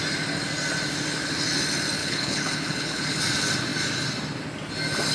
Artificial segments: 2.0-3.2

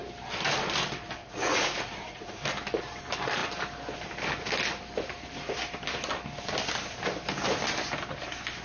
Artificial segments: 1.2-2.4

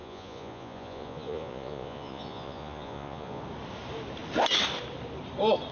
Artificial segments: 0.0-3.4

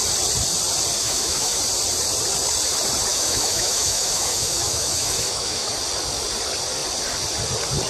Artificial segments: 1.0-1.6; 3.1-5.7

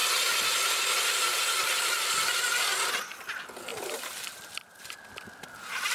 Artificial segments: 3.7-4.5

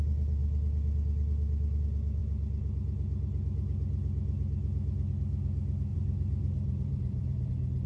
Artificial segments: 5.9-7.5

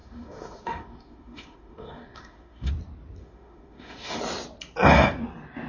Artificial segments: 0.0-2.7; 3.2-4.2

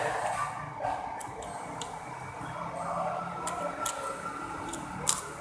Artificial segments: none